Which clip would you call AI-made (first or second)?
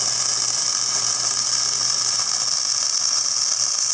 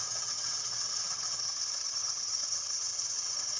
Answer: second